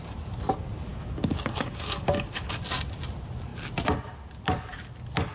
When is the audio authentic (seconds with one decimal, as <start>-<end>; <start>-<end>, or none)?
0.0-0.9; 2.6-5.3